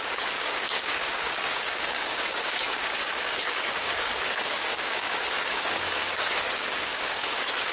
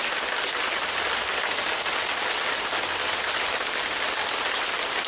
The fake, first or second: first